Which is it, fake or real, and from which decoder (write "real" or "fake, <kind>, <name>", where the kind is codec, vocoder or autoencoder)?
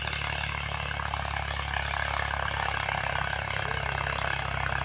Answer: real